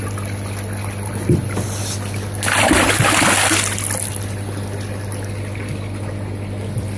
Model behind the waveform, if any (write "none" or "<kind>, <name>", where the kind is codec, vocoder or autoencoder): none